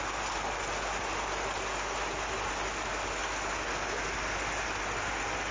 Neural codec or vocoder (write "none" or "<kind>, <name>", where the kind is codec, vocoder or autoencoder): none